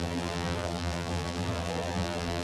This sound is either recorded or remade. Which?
remade